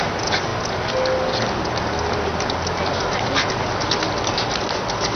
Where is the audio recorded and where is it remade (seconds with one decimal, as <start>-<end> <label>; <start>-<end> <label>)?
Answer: 0.0-5.2 recorded